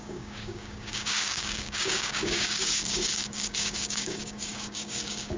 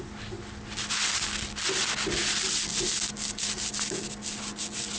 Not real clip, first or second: first